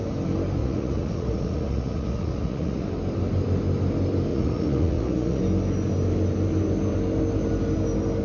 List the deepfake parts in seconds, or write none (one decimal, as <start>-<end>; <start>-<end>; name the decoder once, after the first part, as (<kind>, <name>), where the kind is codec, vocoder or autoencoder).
0.6-2.9 (vocoder, Vocos); 4.3-5.4